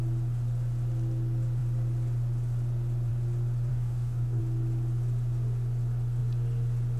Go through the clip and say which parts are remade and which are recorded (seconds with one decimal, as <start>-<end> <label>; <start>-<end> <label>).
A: 0.0-3.7 recorded; 3.7-4.4 remade; 4.4-7.0 recorded